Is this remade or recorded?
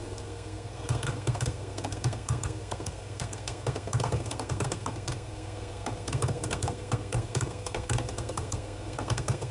remade